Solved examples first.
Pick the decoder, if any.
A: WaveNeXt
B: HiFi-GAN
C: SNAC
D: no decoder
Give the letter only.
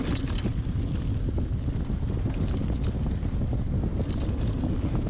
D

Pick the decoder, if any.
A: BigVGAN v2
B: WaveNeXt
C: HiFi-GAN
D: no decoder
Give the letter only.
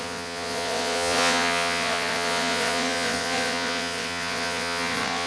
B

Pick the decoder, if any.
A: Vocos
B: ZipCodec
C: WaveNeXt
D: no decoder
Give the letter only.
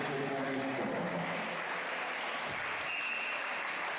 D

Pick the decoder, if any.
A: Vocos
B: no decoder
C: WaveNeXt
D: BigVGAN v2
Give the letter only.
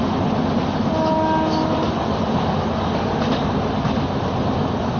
B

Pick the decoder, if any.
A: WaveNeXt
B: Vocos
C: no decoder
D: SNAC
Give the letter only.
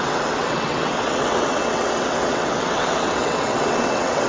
A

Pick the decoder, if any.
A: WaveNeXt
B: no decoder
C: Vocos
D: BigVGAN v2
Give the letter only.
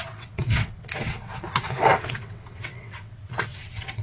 A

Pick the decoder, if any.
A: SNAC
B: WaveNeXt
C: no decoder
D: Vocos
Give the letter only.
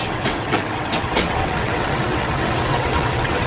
B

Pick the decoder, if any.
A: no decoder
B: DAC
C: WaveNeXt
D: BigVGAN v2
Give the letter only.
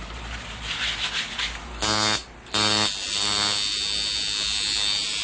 A